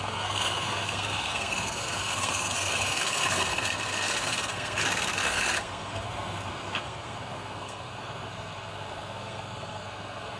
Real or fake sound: fake